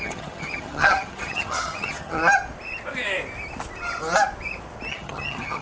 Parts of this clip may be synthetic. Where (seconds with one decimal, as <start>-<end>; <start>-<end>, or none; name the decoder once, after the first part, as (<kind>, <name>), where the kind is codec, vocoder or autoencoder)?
0.0-2.2 (vocoder, HiFi-GAN); 4.9-5.6